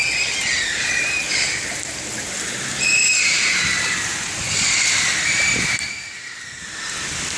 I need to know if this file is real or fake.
real